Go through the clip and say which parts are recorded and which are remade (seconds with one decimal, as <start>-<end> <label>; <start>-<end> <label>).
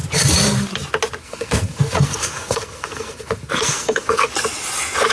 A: 0.0-1.2 recorded; 1.2-4.3 remade; 4.3-5.1 recorded